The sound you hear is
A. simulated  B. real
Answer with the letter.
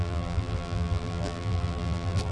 A